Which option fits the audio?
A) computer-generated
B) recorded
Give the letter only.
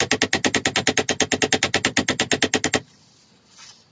B